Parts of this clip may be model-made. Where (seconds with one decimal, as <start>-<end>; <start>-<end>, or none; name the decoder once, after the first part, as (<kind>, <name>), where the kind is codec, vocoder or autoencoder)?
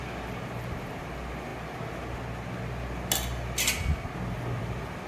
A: none